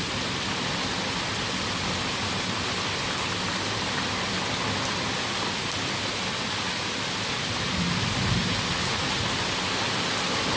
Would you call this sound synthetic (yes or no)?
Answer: no